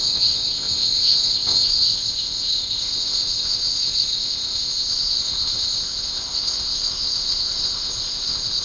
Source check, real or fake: fake